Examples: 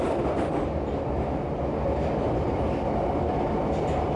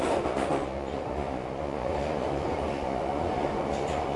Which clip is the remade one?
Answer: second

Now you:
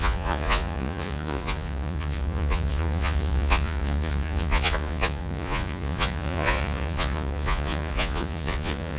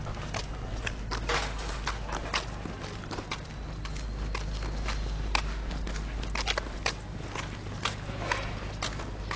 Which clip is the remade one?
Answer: first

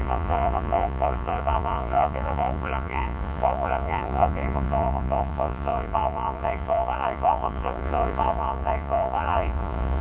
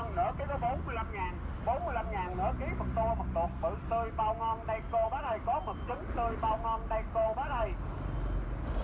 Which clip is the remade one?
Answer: first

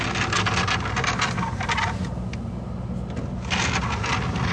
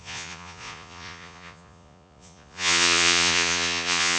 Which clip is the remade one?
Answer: second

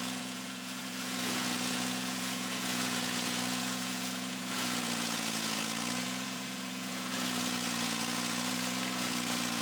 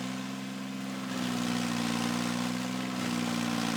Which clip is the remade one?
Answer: first